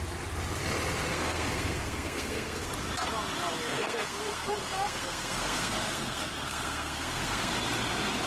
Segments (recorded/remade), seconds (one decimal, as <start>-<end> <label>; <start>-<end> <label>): 0.0-1.1 recorded; 1.1-2.7 remade; 2.7-3.7 recorded; 3.7-7.5 remade; 7.5-8.3 recorded